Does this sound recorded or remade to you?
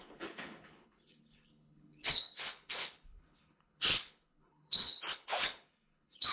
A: remade